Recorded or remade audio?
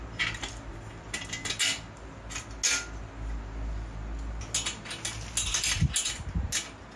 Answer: recorded